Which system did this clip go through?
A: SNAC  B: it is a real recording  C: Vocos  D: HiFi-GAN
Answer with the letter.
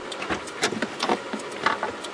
B